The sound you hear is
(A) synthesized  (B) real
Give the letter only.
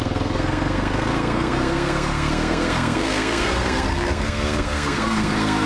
A